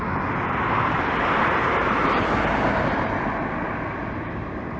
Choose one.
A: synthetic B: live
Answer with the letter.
B